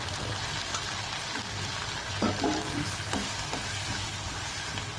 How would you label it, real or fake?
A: real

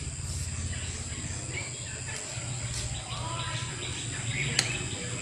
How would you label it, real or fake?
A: real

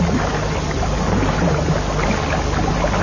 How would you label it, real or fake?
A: real